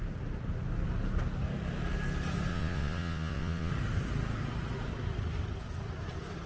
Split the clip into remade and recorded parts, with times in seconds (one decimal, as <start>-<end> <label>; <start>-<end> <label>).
0.0-2.5 recorded; 2.5-3.7 remade; 3.7-6.5 recorded